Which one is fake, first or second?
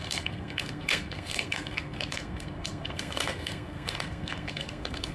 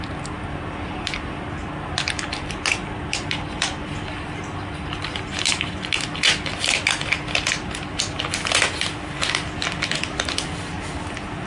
first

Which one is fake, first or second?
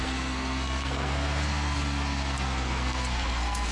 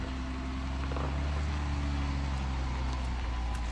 first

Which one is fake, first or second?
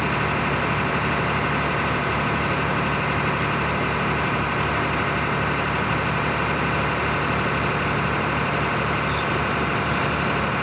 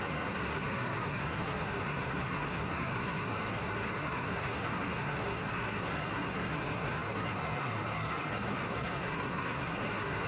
second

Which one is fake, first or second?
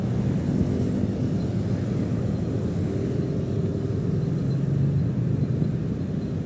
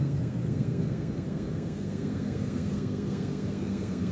second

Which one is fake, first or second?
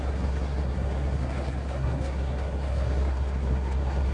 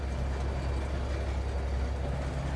first